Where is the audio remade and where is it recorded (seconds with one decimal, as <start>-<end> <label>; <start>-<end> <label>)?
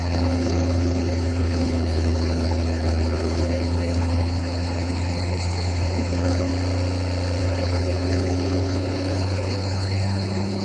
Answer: 0.0-6.5 remade; 6.5-7.4 recorded; 7.4-10.6 remade